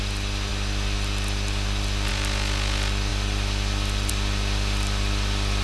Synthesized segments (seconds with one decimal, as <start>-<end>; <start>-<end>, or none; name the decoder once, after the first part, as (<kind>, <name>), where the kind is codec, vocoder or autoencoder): none